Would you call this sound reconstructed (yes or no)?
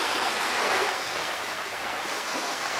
yes